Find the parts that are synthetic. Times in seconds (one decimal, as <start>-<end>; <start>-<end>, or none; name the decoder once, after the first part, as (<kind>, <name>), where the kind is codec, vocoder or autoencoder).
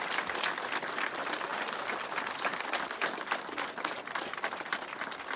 none